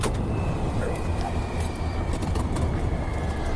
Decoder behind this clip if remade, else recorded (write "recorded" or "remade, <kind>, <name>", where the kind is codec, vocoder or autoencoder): remade, vocoder, BigVGAN v2